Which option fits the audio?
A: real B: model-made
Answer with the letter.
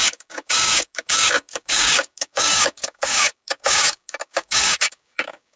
B